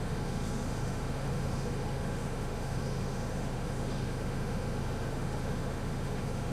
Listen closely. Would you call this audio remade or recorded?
remade